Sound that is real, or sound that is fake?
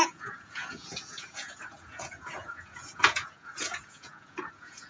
fake